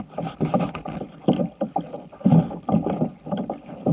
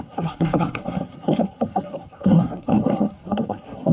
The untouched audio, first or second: first